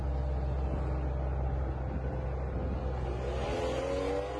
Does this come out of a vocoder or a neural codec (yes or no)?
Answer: no